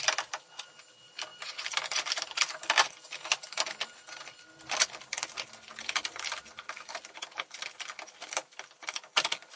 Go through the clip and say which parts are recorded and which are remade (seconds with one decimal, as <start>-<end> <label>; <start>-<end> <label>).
0.0-9.6 recorded